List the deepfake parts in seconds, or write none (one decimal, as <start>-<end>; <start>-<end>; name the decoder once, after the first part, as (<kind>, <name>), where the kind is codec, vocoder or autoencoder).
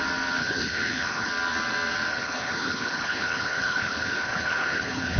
0.4-1.3 (codec, HILCodec); 2.1-5.2